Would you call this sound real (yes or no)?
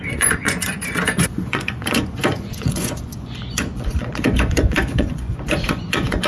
no